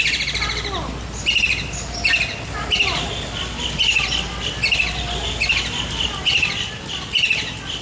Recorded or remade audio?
recorded